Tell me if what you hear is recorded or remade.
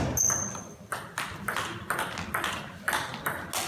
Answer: recorded